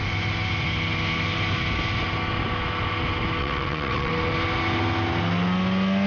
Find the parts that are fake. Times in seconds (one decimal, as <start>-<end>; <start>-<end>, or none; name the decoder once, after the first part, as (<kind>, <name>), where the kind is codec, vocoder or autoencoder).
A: 3.4-4.1 (vocoder, WaveNeXt)